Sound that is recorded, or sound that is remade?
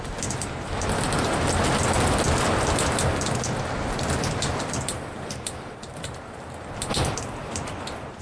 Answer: recorded